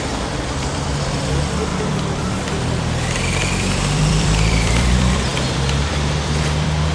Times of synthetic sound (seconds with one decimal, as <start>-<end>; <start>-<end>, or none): 0.0-1.7; 3.6-6.9